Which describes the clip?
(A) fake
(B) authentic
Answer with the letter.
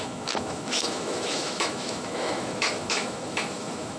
A